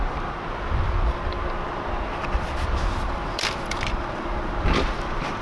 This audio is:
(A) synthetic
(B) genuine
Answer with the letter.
A